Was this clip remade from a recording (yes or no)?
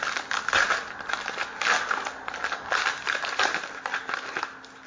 no